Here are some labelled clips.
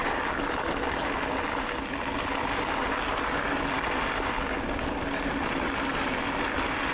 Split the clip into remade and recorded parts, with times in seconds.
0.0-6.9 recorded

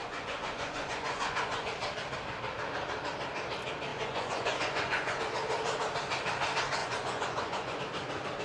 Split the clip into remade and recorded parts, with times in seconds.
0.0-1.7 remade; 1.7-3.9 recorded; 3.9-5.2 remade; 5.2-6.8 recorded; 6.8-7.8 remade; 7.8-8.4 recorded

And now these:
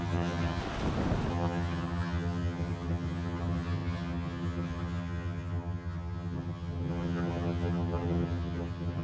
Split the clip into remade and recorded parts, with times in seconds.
0.0-0.6 remade; 0.6-1.3 recorded; 1.3-9.0 remade

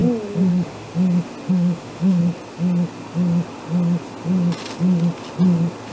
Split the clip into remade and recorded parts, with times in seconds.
0.0-0.5 recorded; 0.5-0.9 remade; 0.9-1.5 recorded; 1.5-2.2 remade; 2.2-5.9 recorded